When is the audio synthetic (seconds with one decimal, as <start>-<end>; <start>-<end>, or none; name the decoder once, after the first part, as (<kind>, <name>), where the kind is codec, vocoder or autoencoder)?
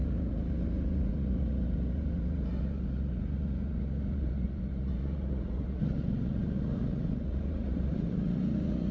0.0-8.9 (vocoder, Vocos)